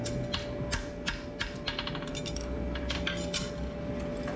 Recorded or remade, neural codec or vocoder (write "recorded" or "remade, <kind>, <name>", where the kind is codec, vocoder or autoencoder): recorded